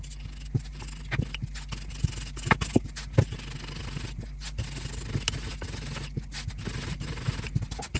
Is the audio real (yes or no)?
yes